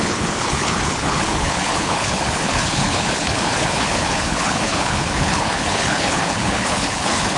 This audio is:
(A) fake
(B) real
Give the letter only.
A